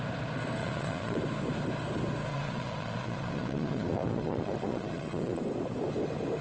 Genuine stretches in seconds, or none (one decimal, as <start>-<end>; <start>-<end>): 0.0-0.6; 1.2-2.3; 5.4-6.4